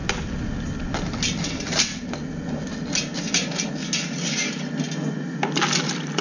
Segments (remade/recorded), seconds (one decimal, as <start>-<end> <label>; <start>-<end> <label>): 0.0-6.2 recorded